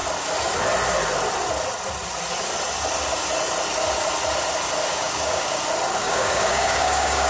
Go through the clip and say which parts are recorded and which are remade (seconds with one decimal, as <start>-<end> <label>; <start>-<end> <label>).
0.0-4.9 recorded; 4.9-5.6 remade; 5.6-6.0 recorded; 6.0-7.3 remade